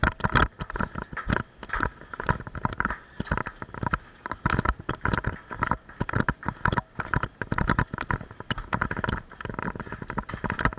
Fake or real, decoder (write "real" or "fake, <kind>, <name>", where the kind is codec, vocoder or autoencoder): real